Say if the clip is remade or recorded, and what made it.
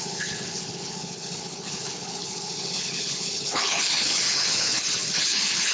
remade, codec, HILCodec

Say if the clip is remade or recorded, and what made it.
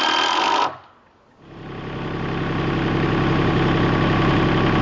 recorded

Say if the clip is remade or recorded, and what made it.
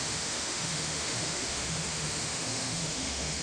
remade, autoencoder, DAC-VAE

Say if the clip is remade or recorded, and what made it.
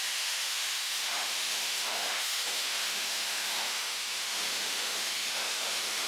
remade, autoencoder, DAC-VAE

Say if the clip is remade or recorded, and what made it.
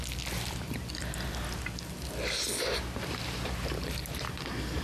recorded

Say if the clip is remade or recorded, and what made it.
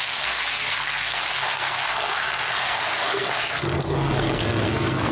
remade, codec, SNAC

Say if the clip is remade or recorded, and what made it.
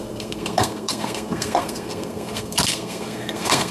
remade, codec, SNAC